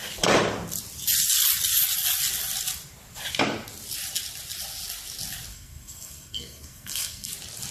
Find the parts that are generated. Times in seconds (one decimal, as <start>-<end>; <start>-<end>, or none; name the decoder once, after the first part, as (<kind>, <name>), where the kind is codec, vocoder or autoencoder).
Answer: 5.5-7.3 (codec, SNAC)